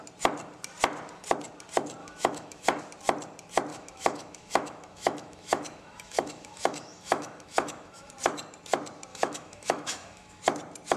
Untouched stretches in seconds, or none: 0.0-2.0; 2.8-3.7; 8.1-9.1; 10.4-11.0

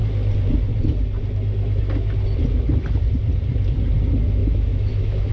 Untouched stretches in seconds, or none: 0.0-4.4

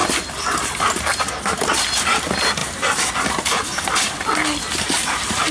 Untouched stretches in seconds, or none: 0.0-5.5

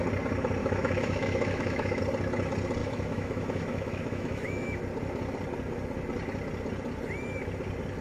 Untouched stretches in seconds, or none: 0.0-0.6; 2.0-2.8; 4.8-8.0

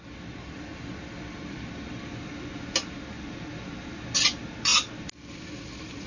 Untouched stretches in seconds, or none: 0.0-6.1

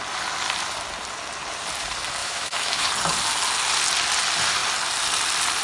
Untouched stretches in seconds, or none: 0.0-2.2; 2.9-5.6

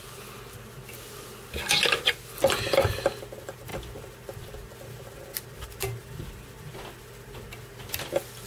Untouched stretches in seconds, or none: 0.0-8.5

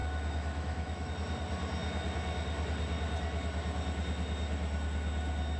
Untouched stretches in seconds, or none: 1.1-5.6